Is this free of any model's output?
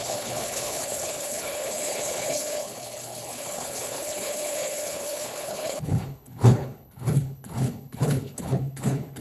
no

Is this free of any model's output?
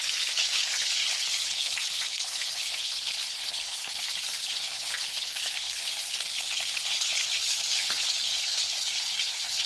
no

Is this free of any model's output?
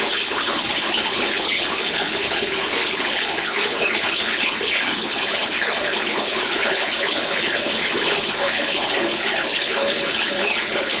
no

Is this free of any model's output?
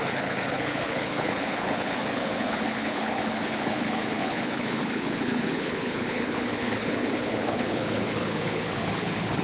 no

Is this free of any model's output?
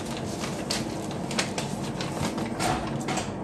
yes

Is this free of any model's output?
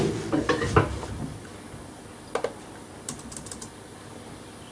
yes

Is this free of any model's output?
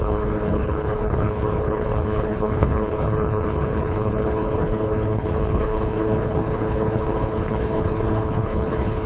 no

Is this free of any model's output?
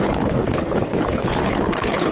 no